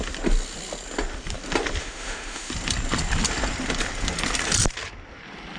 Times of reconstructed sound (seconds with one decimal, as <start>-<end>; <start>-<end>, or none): 1.8-2.5